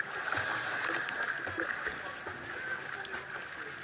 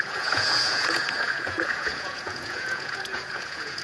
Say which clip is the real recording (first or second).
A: first